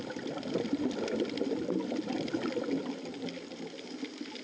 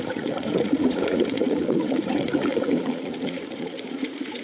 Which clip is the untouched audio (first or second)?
first